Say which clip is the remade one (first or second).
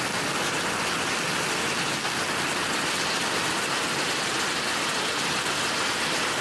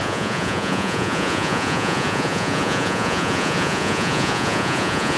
second